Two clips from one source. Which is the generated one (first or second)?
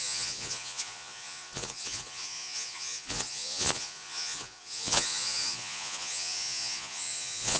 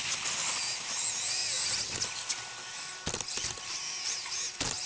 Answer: first